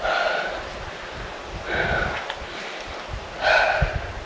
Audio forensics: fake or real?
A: real